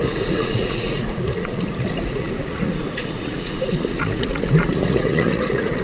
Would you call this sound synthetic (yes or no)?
yes